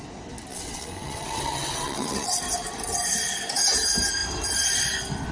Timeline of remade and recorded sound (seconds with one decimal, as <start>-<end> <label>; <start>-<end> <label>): 0.0-0.5 recorded; 0.5-2.4 remade; 2.4-5.3 recorded

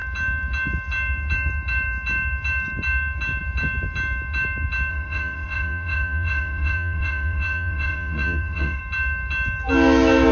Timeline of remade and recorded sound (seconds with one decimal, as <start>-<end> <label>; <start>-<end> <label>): 0.0-4.9 recorded; 4.9-8.8 remade; 8.8-10.3 recorded

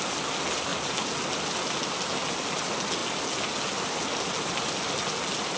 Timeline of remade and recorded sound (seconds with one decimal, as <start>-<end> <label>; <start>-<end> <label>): 0.0-5.6 recorded

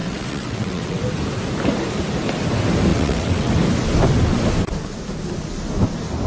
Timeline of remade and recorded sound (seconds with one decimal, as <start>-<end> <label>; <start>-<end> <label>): 0.0-1.0 remade; 1.0-2.9 recorded; 2.9-3.5 remade; 3.5-6.3 recorded

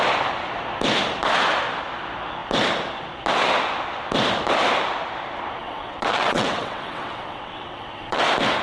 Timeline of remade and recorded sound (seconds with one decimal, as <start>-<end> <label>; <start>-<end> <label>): 0.0-5.6 recorded; 5.6-8.2 remade; 8.2-8.6 recorded